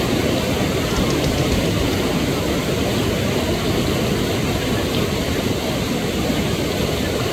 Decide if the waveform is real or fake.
real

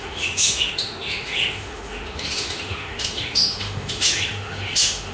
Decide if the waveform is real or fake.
fake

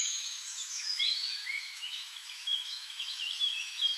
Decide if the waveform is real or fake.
fake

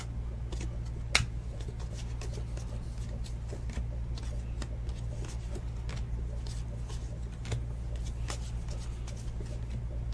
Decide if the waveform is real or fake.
real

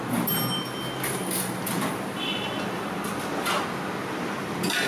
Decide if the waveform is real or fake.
real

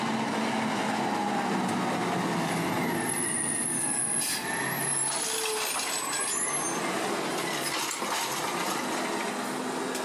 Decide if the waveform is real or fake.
real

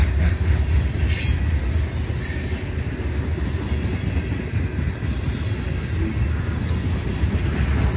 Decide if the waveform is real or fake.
real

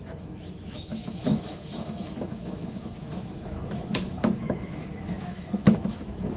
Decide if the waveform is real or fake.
fake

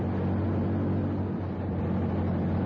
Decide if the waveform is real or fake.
real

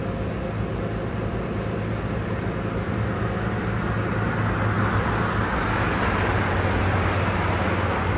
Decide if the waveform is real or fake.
real